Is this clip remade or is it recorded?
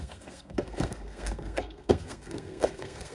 remade